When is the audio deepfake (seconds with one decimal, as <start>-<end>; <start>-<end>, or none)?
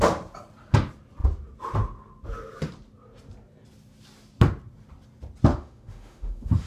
5.5-6.7